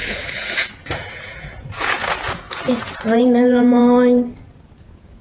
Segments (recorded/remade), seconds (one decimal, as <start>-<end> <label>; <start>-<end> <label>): 0.0-3.8 remade; 3.8-4.5 recorded; 4.5-5.2 remade